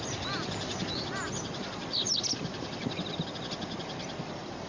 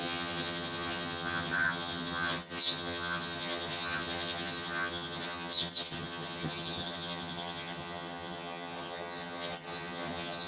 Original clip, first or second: first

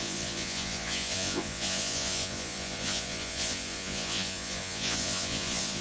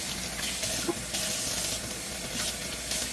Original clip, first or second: second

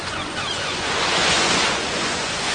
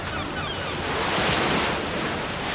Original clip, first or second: second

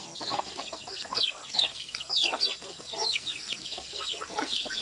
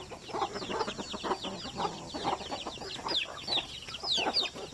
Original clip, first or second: second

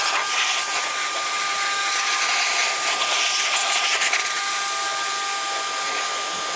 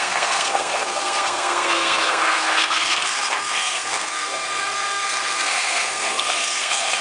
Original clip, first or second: first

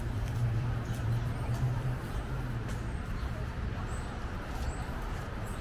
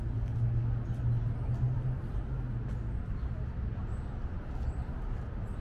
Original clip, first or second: second